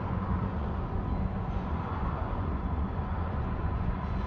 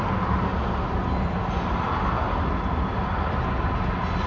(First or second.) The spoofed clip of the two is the first